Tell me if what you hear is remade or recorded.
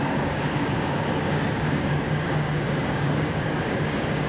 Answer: remade